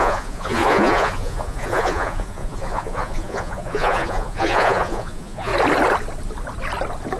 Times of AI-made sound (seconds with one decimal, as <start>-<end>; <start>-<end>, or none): 0.0-5.5

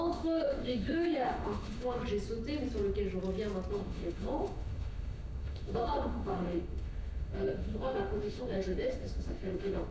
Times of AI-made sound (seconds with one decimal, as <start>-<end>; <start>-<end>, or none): 0.0-2.0; 3.7-9.9

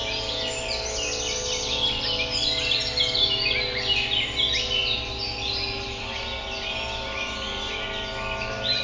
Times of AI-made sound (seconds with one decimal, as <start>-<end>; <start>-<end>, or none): 0.0-0.5

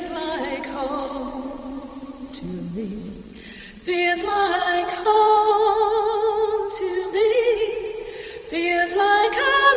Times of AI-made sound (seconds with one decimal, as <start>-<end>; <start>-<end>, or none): 1.0-5.5; 6.9-9.0